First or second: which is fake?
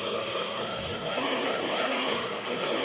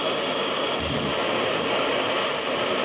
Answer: first